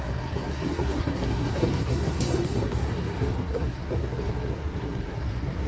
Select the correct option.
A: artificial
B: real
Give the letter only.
A